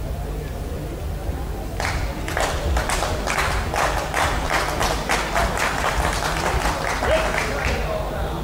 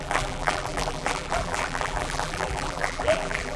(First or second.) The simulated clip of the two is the second